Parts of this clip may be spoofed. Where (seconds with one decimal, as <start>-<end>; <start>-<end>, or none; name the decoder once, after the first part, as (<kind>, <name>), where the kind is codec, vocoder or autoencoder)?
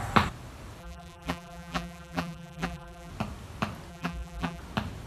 0.8-3.1 (vocoder, BigVGAN v2); 3.9-4.6